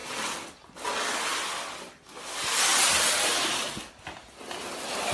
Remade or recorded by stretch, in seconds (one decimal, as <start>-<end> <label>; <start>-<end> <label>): 0.0-5.1 recorded